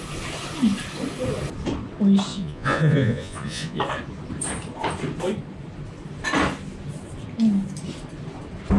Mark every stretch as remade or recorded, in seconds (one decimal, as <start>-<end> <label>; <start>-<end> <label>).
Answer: 0.0-2.3 recorded; 2.3-3.8 remade; 3.8-8.8 recorded